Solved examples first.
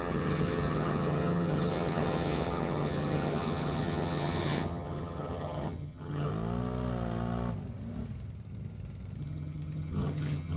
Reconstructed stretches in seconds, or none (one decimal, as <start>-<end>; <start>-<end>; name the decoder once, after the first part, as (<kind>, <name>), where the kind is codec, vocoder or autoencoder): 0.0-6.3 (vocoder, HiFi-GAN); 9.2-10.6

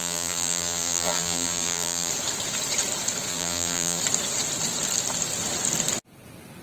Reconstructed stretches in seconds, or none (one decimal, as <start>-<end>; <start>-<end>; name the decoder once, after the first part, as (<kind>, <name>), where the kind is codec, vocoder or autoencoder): 0.0-2.1 (vocoder, BigVGAN v2); 3.3-4.0

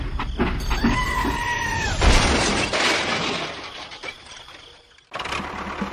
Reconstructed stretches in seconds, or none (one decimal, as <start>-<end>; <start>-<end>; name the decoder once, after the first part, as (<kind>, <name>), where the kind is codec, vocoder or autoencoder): 1.0-2.7 (vocoder, BigVGAN v2); 4.0-4.5

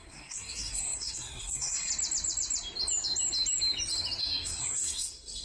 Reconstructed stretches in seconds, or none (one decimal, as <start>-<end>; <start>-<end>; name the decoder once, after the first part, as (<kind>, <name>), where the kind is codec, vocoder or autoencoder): 0.0-1.9 (codec, SNAC); 4.2-5.4